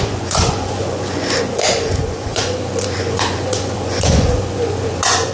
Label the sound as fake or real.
fake